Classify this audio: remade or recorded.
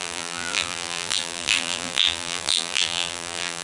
remade